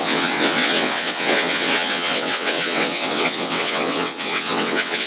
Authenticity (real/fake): fake